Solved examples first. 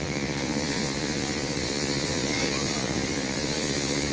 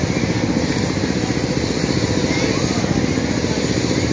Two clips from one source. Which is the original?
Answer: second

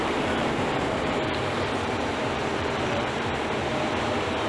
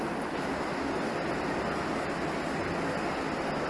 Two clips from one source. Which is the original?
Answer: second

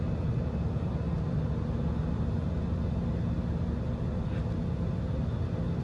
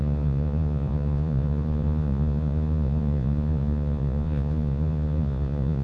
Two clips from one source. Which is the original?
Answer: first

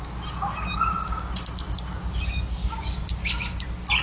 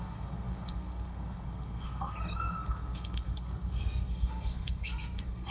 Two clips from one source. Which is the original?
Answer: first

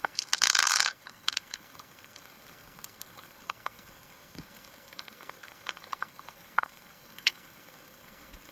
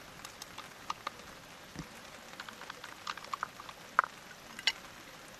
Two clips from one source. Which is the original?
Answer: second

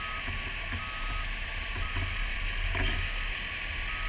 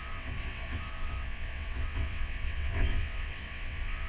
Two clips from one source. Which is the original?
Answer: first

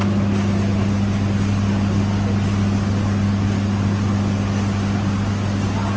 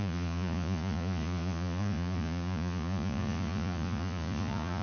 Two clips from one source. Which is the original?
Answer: first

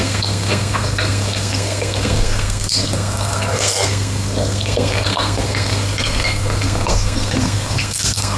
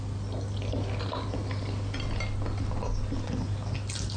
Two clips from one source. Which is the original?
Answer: second